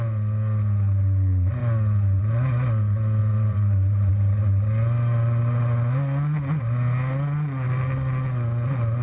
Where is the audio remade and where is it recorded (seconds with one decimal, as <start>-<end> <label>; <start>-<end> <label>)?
0.0-3.2 recorded; 3.2-4.1 remade; 4.1-9.0 recorded

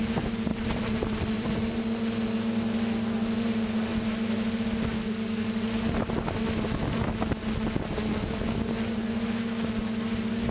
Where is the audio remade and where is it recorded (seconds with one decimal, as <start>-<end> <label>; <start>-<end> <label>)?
0.0-0.5 recorded; 0.5-1.8 remade; 1.8-10.5 recorded

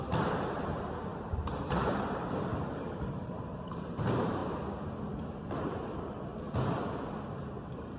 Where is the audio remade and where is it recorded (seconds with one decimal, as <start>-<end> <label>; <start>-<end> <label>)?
0.0-4.4 remade; 4.4-5.5 recorded; 5.5-6.3 remade; 6.3-7.4 recorded; 7.4-8.0 remade

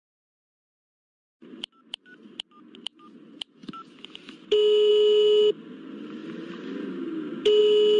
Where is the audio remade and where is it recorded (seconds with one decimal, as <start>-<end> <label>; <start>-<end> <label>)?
0.0-8.0 recorded

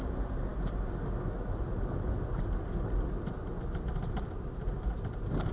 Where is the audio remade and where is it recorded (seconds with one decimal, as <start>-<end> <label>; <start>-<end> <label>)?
0.0-5.5 recorded

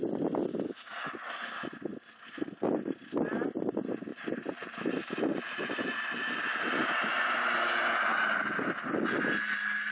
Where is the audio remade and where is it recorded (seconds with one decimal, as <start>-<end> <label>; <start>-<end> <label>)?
0.0-4.1 recorded; 4.1-7.5 remade; 7.5-9.9 recorded

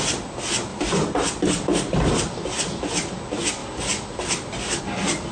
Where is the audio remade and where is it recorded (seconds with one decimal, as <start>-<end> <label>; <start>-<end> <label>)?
0.0-0.7 recorded; 0.7-2.8 remade; 2.8-5.3 recorded